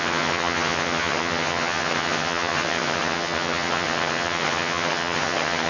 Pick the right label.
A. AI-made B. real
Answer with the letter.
A